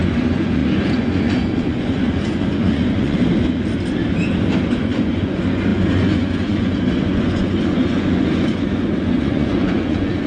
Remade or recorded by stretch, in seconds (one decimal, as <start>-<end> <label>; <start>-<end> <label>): 0.0-3.2 remade; 3.2-4.8 recorded; 4.8-10.3 remade